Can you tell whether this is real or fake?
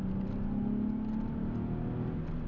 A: real